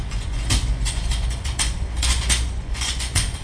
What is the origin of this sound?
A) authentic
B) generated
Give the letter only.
B